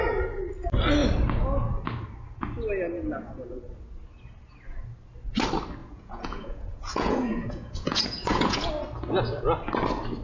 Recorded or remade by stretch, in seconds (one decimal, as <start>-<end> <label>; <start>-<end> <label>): 0.0-5.8 recorded; 5.8-8.7 remade; 8.7-10.2 recorded